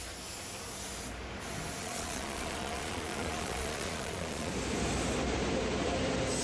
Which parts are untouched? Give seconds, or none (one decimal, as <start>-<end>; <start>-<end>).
0.0-1.8; 4.5-6.4

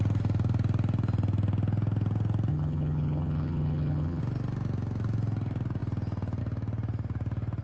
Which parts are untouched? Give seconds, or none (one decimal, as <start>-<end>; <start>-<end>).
0.0-2.5; 4.2-7.6

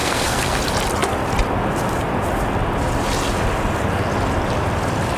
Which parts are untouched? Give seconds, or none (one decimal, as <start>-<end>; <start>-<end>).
0.6-5.2

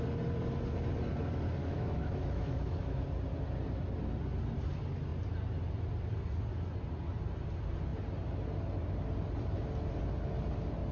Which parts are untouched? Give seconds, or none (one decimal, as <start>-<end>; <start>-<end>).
0.0-1.6; 3.0-10.9

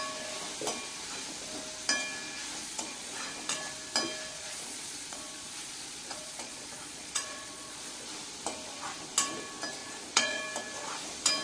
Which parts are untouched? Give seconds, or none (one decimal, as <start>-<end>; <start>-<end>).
0.0-2.6; 3.2-4.3; 8.1-9.8; 10.4-11.4